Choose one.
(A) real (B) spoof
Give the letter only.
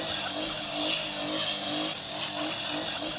A